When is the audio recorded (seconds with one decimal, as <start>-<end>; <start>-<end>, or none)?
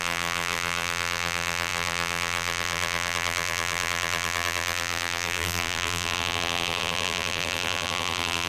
none